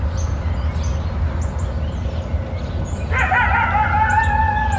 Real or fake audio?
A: real